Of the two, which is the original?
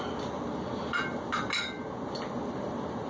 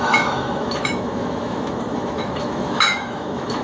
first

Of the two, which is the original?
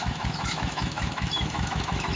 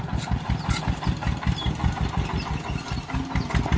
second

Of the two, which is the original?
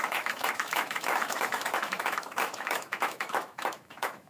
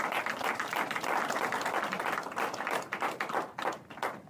second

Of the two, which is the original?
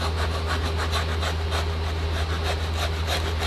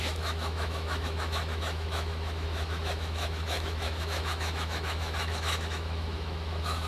first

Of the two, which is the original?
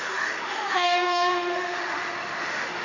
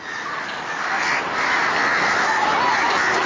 second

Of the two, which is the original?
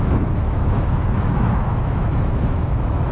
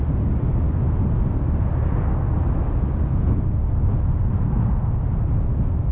second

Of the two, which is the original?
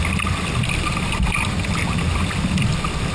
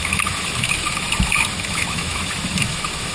first